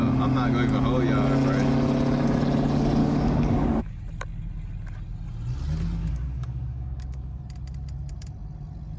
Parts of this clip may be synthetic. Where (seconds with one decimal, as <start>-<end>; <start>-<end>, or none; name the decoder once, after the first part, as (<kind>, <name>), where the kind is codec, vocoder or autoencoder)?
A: 3.0-4.0 (codec, DAC); 6.0-7.4